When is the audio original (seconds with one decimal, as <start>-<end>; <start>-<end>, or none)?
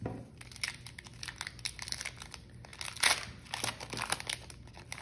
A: 0.0-5.0